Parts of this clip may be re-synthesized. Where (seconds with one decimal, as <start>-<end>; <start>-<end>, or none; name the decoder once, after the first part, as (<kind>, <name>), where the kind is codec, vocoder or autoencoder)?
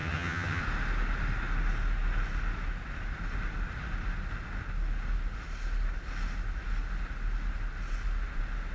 0.0-0.6 (vocoder, HiFi-GAN)